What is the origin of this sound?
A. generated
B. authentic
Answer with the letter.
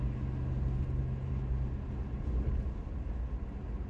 B